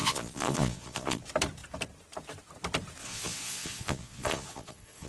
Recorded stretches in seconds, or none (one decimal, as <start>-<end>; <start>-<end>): 1.2-3.0